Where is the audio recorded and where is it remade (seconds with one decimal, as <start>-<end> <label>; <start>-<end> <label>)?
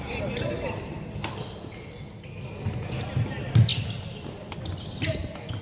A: 0.0-5.6 recorded